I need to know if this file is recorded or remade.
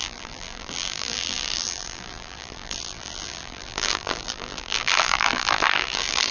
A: remade